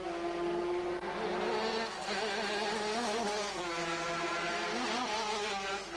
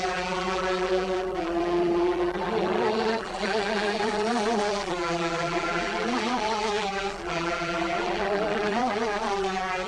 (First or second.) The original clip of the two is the first